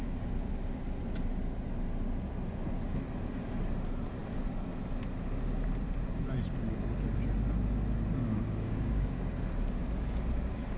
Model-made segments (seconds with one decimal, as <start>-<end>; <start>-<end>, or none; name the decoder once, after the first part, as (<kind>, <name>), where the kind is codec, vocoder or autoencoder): 8.2-9.2 (codec, DAC)